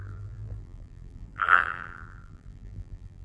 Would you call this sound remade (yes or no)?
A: yes